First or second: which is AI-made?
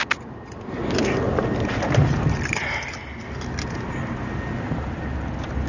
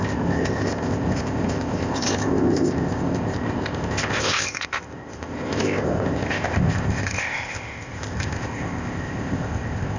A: second